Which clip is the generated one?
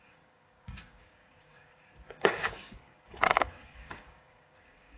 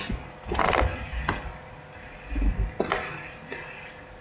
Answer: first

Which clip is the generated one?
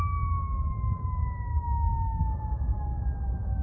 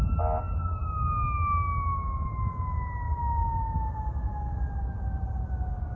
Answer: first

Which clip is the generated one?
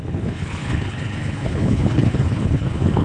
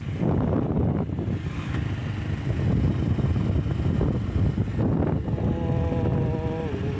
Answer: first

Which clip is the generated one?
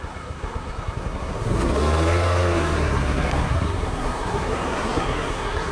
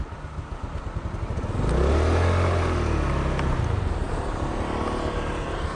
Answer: first